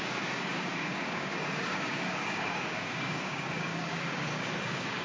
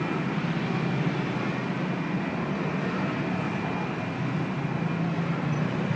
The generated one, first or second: first